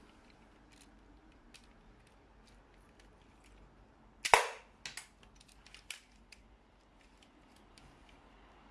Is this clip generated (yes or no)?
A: no